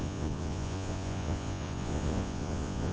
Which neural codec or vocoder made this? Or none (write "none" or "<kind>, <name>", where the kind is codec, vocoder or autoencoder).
vocoder, Vocos